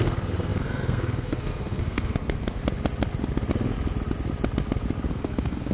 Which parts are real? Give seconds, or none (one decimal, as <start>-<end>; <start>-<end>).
2.6-5.1